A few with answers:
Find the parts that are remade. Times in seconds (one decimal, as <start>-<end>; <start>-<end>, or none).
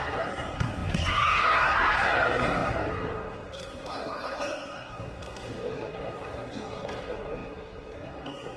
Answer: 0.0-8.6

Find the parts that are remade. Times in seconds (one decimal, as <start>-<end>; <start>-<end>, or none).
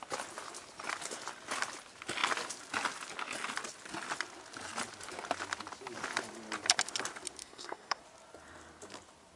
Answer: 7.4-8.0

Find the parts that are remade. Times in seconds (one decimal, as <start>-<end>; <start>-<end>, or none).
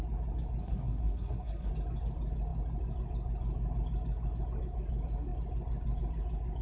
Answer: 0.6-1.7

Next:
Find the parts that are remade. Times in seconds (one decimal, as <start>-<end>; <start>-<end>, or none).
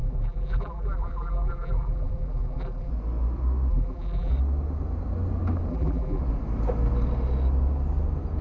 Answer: 0.0-2.9; 3.7-4.3; 5.7-6.2